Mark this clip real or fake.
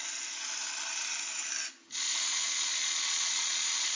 real